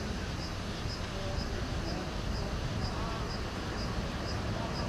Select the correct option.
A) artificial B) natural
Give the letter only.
B